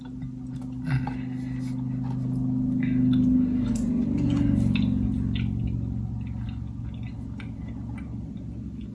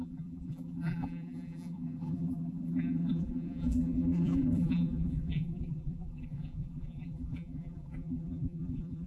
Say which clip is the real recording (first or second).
first